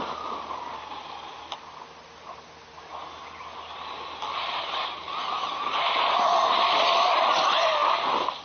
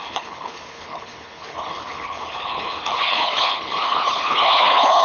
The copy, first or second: second